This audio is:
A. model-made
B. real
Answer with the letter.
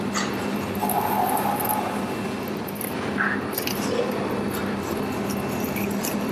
B